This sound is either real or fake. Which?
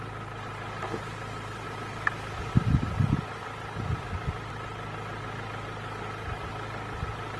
real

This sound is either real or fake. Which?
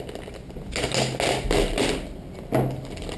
real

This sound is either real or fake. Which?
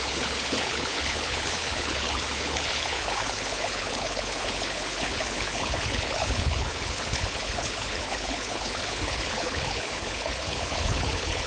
fake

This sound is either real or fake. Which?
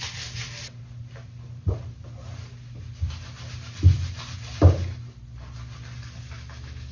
real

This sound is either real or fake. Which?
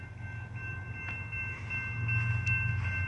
real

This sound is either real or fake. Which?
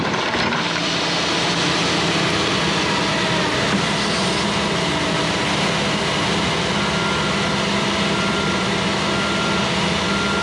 real